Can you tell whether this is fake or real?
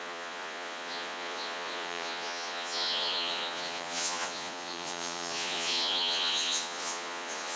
fake